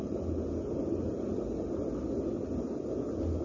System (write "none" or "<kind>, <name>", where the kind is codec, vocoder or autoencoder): none